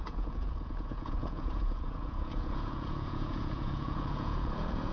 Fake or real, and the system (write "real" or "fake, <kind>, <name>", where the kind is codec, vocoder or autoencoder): fake, vocoder, Vocos